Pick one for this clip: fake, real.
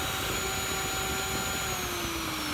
real